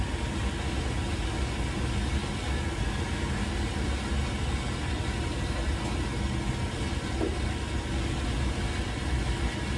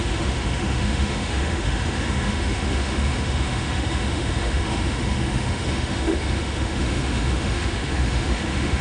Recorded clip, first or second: first